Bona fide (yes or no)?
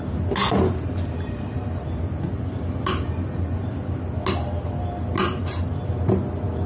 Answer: yes